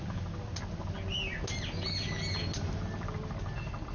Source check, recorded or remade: recorded